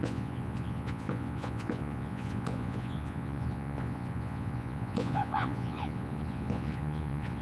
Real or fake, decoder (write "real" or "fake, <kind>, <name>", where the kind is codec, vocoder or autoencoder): fake, vocoder, Vocos